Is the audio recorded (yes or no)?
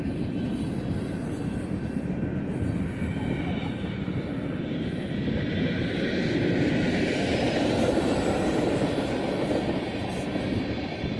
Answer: yes